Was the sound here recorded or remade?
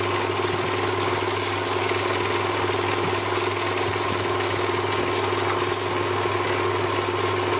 recorded